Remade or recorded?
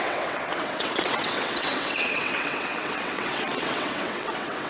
remade